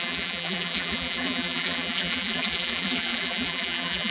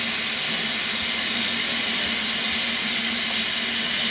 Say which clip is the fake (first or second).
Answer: first